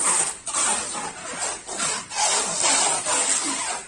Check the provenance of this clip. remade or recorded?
recorded